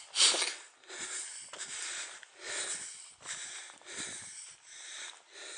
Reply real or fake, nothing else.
real